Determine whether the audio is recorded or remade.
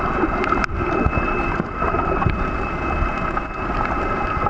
recorded